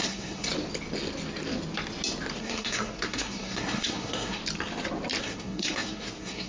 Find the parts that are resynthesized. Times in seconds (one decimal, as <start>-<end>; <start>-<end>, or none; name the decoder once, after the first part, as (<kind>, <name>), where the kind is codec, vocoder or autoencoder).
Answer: 0.0-0.5 (codec, SNAC); 2.4-4.4; 5.2-6.5